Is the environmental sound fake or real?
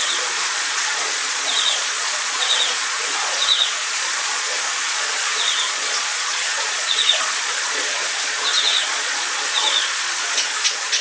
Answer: fake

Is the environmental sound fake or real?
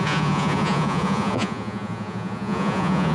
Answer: fake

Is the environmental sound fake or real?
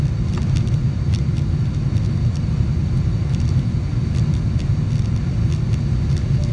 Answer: real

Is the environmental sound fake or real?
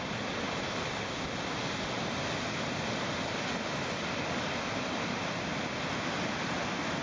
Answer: real